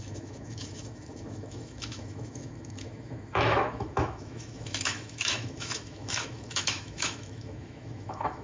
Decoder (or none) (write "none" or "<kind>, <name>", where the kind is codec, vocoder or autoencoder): autoencoder, DAC-VAE